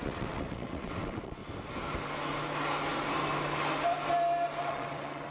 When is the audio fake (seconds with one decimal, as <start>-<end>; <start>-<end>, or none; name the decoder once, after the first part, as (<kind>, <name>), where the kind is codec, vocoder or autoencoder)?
0.0-1.4 (vocoder, WaveNeXt); 4.6-5.3